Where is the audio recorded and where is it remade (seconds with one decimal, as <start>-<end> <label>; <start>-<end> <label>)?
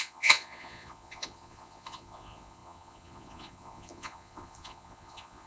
0.0-5.5 remade